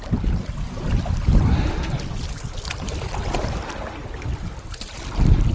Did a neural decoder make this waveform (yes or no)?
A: no